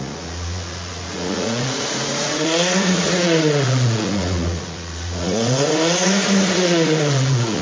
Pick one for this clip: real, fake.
fake